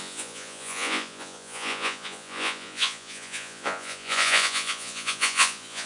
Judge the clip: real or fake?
fake